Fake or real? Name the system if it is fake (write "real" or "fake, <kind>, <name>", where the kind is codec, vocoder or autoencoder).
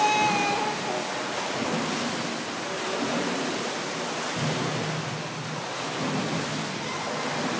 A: real